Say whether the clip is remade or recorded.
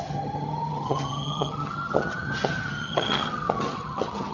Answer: remade